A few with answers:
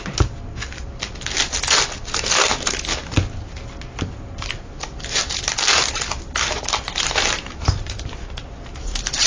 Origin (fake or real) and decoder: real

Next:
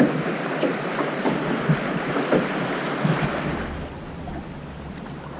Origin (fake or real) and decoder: real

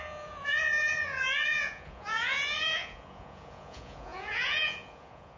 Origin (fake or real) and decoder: fake, vocoder, Vocos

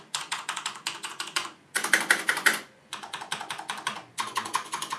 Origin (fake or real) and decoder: fake, vocoder, Vocos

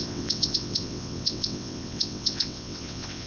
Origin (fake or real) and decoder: fake, vocoder, WaveNeXt